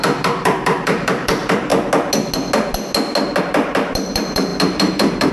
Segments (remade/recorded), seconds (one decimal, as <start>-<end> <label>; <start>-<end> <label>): 0.0-1.7 remade; 1.7-3.4 recorded; 3.4-5.3 remade